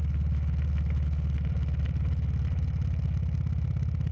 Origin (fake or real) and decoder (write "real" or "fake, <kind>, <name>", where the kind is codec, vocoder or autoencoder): real